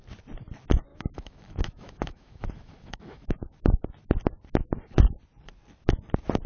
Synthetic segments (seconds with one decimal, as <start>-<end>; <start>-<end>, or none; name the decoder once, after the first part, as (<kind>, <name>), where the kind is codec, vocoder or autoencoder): 0.9-3.3 (autoencoder, DAC-VAE)